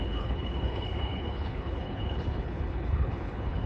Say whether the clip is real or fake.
fake